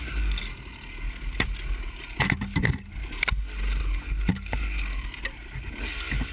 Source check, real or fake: real